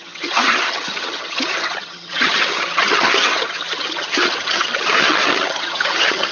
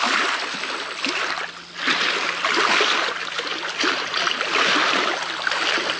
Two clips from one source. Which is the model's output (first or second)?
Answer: first